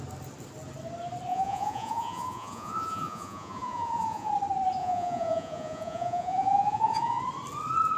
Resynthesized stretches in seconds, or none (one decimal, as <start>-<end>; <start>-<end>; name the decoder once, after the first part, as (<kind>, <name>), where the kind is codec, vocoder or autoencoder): 1.3-4.3 (vocoder, Vocos); 4.8-7.2